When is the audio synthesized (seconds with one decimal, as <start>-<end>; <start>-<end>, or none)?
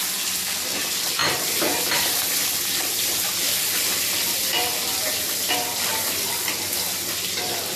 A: 0.0-5.9; 7.1-7.8